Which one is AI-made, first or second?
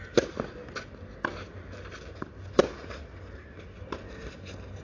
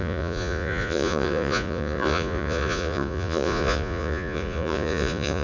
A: second